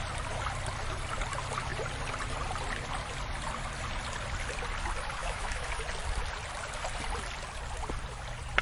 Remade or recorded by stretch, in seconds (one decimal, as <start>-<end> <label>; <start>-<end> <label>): 0.0-5.2 recorded; 5.2-5.7 remade; 5.7-8.6 recorded